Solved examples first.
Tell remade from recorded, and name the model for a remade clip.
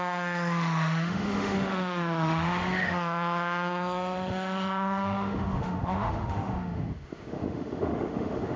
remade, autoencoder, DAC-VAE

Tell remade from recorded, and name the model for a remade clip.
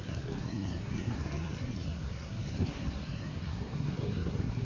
remade, codec, SNAC